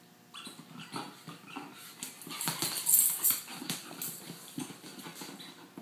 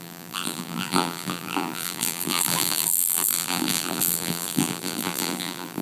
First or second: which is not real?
second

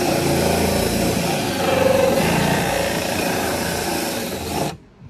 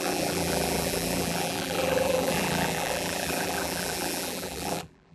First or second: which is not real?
second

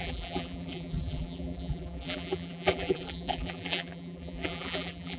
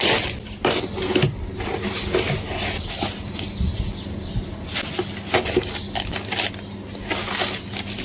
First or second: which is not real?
first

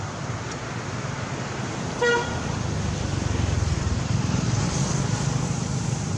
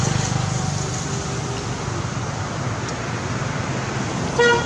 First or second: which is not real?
first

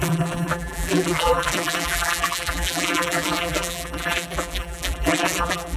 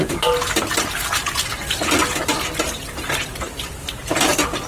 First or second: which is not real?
first